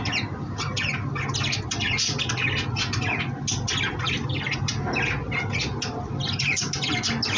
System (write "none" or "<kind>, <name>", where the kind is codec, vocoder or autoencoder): none